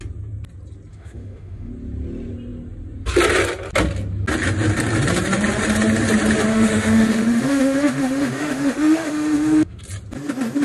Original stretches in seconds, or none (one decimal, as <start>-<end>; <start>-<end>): 0.0-0.9; 1.7-6.5; 9.8-10.6